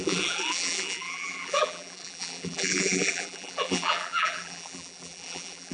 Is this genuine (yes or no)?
no